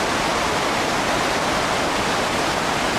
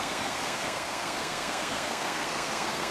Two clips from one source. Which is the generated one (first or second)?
second